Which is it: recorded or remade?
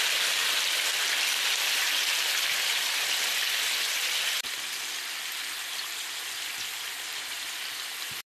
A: recorded